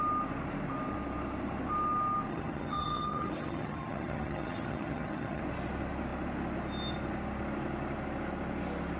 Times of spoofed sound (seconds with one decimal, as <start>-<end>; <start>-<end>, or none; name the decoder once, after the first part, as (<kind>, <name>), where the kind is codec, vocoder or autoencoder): 2.3-5.4 (vocoder, HiFi-GAN)